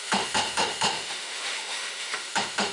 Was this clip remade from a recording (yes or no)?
yes